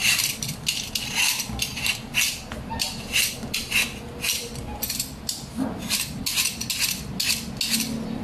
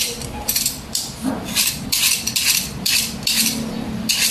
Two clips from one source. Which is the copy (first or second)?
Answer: second